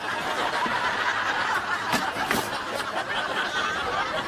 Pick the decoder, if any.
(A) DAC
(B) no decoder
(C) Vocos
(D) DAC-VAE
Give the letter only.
B